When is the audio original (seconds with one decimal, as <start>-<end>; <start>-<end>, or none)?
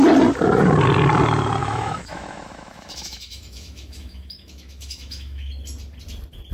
0.0-1.6; 5.5-6.5